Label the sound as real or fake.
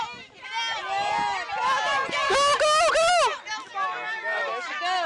real